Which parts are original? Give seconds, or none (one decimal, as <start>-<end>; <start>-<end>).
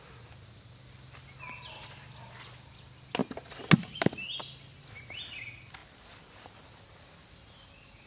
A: 0.0-8.1